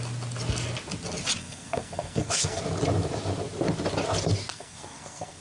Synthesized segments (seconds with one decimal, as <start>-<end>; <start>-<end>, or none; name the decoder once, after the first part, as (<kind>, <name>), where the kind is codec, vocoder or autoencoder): 1.4-2.6 (codec, SNAC); 4.5-5.4